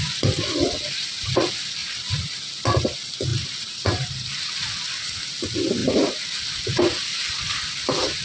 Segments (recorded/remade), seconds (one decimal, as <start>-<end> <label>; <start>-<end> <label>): 0.0-1.8 recorded; 1.8-2.4 remade; 2.4-3.3 recorded; 3.3-4.4 remade; 4.4-5.8 recorded; 5.8-7.3 remade; 7.3-8.2 recorded